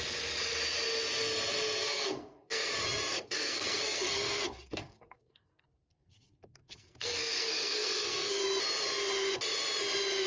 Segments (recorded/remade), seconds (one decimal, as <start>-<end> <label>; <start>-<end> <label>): 0.0-1.8 recorded; 1.8-2.7 remade; 2.7-3.1 recorded; 3.1-8.4 remade; 8.4-10.3 recorded

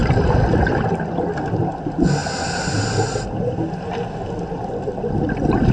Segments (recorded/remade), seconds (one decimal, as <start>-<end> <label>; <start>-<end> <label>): 0.0-5.7 recorded

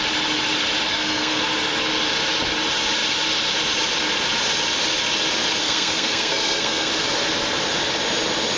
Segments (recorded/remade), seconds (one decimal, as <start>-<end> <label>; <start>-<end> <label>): 0.0-0.9 recorded; 0.9-1.4 remade; 1.4-5.6 recorded; 5.6-6.9 remade; 6.9-8.6 recorded